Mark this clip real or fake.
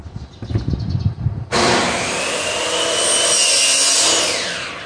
real